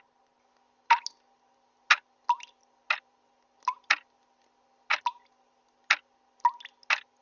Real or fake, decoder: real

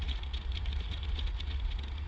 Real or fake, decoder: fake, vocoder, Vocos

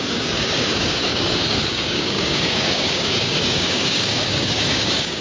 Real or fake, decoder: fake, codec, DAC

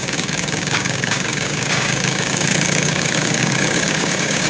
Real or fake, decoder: fake, codec, DAC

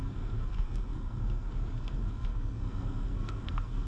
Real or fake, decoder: fake, codec, SNAC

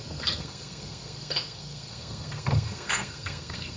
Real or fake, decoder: fake, codec, SNAC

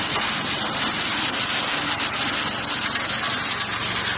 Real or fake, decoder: real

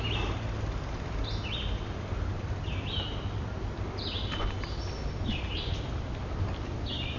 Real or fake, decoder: real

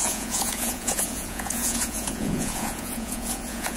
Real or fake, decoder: fake, vocoder, Vocos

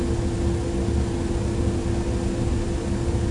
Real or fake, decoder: real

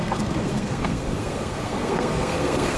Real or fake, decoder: fake, codec, SNAC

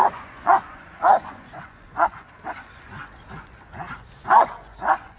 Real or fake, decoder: fake, vocoder, Vocos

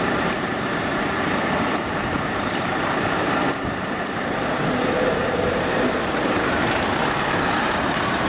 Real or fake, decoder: fake, vocoder, BigVGAN v2